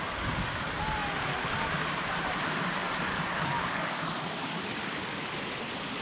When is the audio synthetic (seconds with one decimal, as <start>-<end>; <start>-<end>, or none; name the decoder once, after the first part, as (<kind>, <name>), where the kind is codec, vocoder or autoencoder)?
2.8-5.3 (codec, DAC)